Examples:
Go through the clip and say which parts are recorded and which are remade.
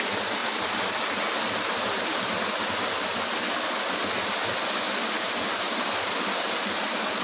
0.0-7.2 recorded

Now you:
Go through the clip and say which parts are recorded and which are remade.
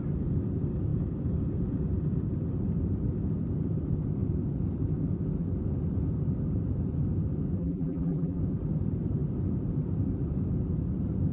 0.0-7.6 recorded; 7.6-8.4 remade; 8.4-11.3 recorded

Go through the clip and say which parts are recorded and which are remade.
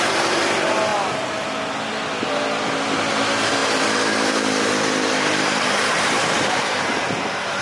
0.0-0.9 remade; 0.9-3.1 recorded; 3.1-7.6 remade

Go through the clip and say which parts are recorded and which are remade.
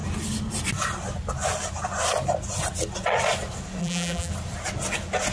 0.0-3.8 recorded; 3.8-4.3 remade; 4.3-5.3 recorded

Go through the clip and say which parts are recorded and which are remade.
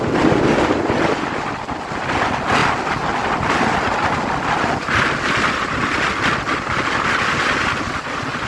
0.0-8.5 recorded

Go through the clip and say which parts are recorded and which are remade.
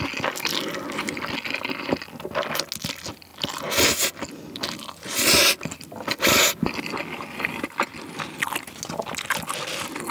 0.0-10.1 recorded